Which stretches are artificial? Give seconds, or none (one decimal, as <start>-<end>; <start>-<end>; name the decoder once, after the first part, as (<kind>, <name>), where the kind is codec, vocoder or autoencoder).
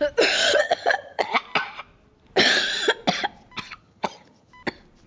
0.4-1.3 (vocoder, HiFi-GAN); 3.8-4.5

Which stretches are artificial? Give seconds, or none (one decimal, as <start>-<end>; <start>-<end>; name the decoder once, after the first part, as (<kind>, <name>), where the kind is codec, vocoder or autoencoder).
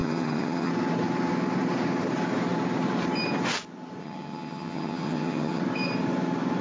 0.0-0.7 (vocoder, HiFi-GAN); 4.0-5.6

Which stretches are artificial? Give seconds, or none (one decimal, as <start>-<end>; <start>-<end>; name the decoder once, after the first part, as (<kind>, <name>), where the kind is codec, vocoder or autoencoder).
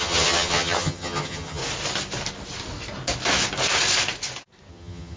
0.0-1.6 (vocoder, HiFi-GAN); 4.7-5.2